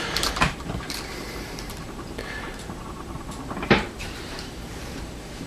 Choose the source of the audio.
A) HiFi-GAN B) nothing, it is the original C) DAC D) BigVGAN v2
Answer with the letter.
D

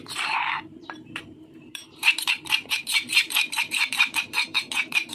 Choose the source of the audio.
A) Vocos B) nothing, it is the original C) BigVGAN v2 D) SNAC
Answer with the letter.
C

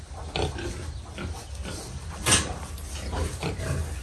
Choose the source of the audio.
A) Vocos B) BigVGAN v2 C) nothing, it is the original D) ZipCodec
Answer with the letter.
C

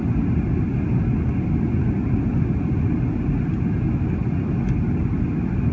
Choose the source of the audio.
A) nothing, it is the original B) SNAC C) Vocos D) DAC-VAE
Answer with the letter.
A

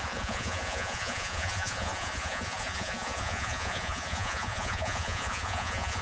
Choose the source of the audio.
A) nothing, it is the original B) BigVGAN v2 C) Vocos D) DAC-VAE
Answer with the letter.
C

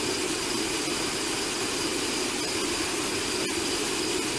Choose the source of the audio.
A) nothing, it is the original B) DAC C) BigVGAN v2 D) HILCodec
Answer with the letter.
A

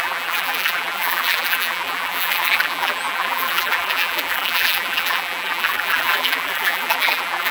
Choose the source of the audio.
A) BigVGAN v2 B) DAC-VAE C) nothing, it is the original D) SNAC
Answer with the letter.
A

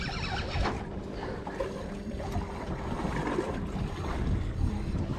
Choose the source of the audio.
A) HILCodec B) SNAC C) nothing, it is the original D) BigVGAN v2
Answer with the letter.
C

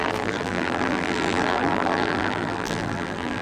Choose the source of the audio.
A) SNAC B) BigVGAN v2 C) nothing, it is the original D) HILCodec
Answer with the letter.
B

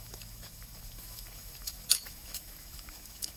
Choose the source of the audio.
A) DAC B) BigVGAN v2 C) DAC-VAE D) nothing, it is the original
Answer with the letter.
C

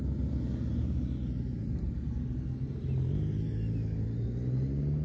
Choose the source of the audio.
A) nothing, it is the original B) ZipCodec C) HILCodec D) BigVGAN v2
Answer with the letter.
A